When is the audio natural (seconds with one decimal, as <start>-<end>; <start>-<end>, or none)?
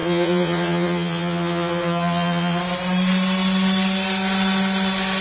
2.6-5.2